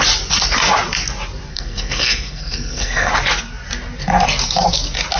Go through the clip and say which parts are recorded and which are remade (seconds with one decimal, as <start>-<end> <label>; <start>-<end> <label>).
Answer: 0.0-1.5 recorded; 1.5-3.1 remade; 3.1-5.2 recorded